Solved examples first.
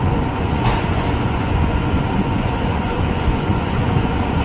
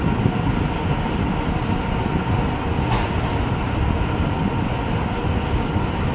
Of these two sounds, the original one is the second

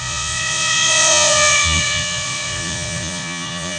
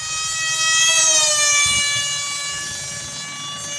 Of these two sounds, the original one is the second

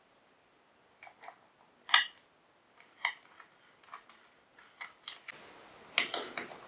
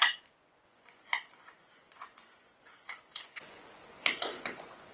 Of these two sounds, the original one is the first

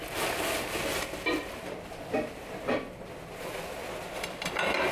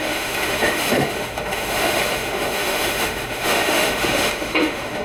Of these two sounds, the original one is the first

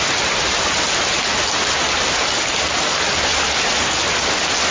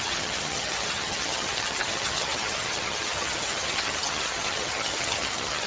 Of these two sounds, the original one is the first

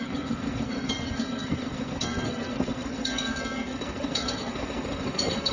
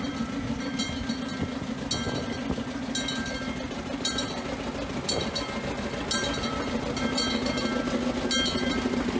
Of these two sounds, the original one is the second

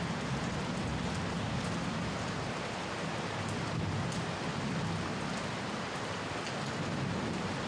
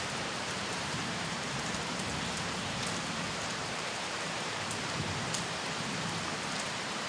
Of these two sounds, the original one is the first